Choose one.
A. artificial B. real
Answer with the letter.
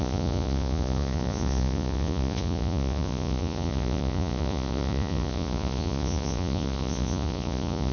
A